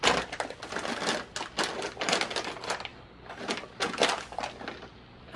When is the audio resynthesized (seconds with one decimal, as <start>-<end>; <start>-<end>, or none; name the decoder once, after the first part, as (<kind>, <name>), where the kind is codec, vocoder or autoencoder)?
none